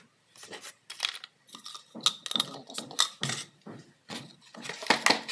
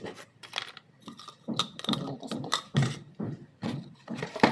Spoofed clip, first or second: second